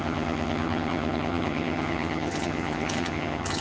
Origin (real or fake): fake